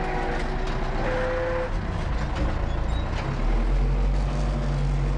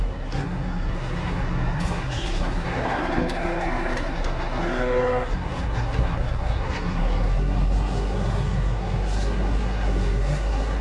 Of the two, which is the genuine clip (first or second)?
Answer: first